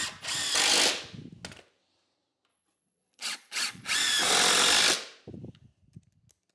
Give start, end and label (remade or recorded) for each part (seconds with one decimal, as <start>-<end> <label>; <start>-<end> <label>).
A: 0.0-2.5 recorded; 2.5-4.3 remade; 4.3-6.5 recorded